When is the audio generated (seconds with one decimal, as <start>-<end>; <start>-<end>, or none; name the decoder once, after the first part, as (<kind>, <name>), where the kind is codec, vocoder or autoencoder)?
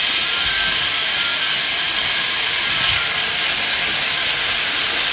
none